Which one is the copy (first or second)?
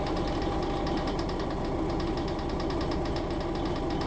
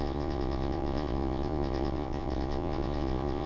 second